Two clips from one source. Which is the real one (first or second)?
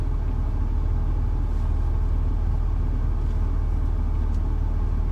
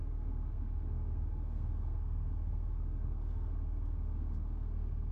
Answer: first